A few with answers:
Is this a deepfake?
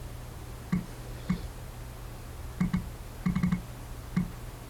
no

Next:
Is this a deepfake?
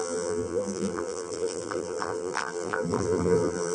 yes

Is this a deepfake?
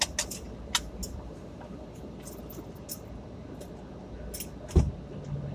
no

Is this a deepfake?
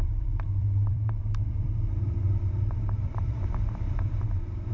yes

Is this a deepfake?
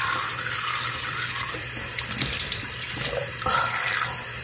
yes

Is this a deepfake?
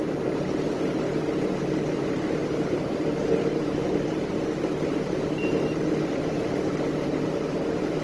yes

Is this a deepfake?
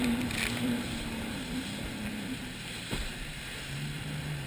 yes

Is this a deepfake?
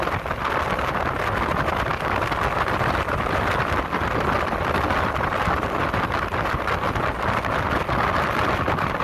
no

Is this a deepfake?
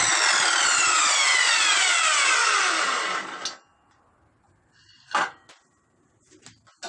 no